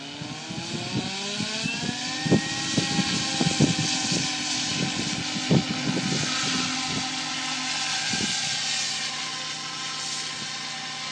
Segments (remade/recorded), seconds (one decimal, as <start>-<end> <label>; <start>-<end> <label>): 0.0-11.1 recorded